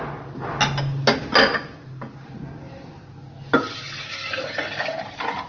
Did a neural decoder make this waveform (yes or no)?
no